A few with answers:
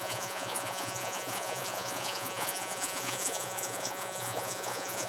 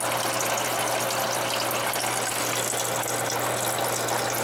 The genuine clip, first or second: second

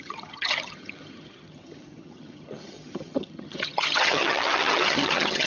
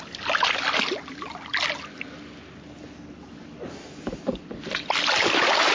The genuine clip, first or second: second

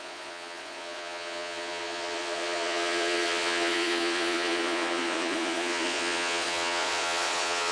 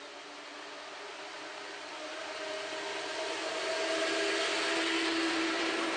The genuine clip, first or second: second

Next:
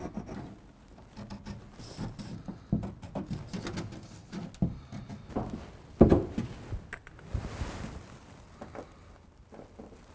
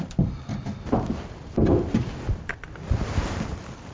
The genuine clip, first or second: first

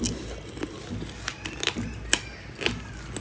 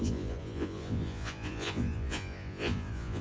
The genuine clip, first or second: first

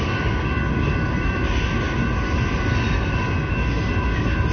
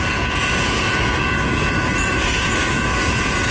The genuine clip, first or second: first